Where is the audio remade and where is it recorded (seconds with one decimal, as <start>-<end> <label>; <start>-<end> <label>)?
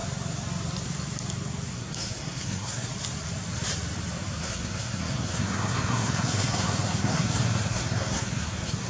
0.0-1.7 recorded; 1.7-2.9 remade; 2.9-4.4 recorded; 4.4-8.9 remade